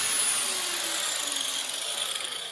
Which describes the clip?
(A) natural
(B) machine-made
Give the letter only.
A